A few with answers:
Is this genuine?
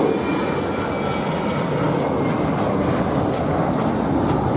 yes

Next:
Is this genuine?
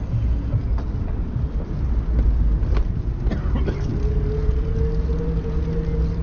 yes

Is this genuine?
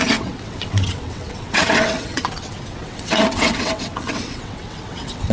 no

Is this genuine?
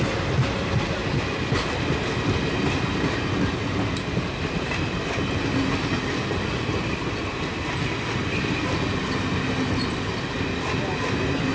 yes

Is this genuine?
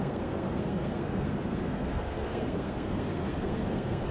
no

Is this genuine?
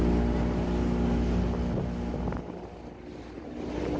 yes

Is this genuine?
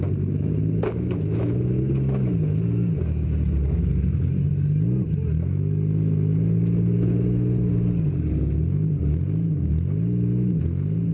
yes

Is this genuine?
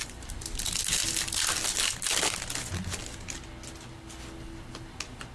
yes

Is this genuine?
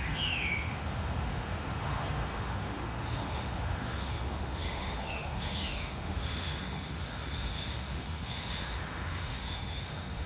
no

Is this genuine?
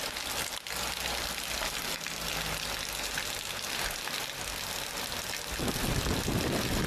yes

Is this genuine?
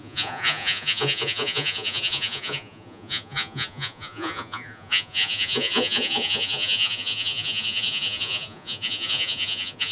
no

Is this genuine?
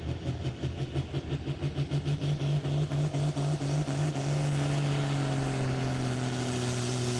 yes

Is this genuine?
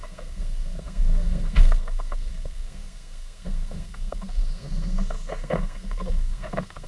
no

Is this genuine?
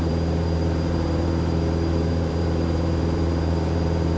no